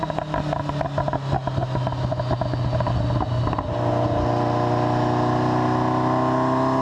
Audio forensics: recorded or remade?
recorded